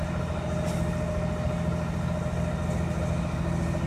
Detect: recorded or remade recorded